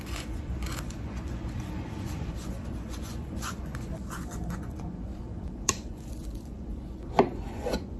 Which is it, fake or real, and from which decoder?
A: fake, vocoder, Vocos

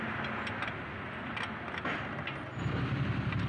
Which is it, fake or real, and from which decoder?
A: real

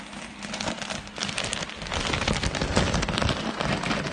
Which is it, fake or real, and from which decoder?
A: real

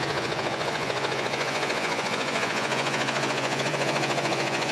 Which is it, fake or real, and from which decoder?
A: fake, vocoder, Vocos